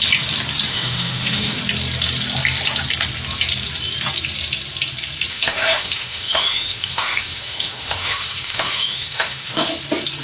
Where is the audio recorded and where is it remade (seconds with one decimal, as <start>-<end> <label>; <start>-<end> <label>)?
0.0-0.7 recorded; 0.7-1.6 remade; 1.6-5.3 recorded; 5.3-9.7 remade; 9.7-10.2 recorded